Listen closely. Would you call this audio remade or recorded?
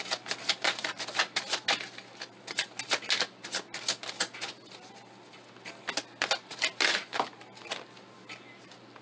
recorded